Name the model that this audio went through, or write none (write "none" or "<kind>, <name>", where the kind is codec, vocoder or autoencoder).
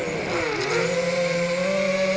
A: none